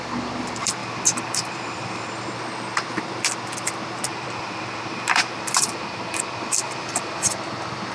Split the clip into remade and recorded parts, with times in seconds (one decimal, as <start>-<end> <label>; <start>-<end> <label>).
0.0-0.8 recorded; 0.8-2.1 remade; 2.1-4.1 recorded; 4.1-7.3 remade; 7.3-7.9 recorded

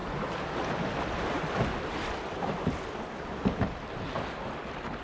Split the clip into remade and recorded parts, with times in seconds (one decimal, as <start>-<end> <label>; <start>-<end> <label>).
0.0-5.0 recorded

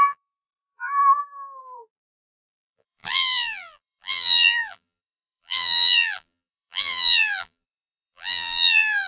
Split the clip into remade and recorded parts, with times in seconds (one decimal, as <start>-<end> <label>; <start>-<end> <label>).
0.0-1.0 remade; 1.0-1.6 recorded; 1.6-9.1 remade

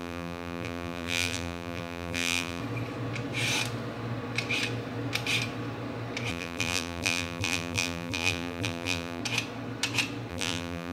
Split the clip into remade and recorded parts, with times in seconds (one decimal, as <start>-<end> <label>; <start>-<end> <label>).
0.0-2.6 remade; 2.6-6.3 recorded; 6.3-9.2 remade; 9.2-10.3 recorded; 10.3-10.9 remade

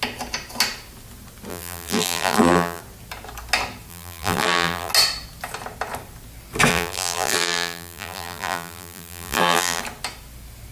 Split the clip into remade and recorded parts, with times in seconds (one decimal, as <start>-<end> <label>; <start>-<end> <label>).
0.0-1.5 recorded; 1.5-2.8 remade; 2.8-3.9 recorded; 3.9-4.9 remade; 4.9-6.7 recorded; 6.7-9.8 remade; 9.8-10.7 recorded

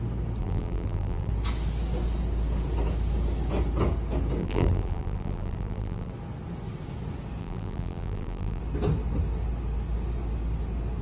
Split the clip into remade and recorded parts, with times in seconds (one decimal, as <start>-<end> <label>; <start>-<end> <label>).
0.0-0.4 recorded; 0.4-1.3 remade; 1.3-4.4 recorded; 4.4-6.1 remade; 6.1-7.4 recorded; 7.4-8.6 remade; 8.6-11.0 recorded